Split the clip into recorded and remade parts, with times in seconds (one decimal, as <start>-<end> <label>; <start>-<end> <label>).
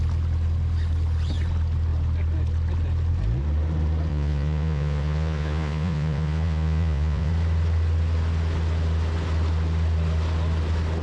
0.0-4.1 recorded; 4.1-7.3 remade; 7.3-11.0 recorded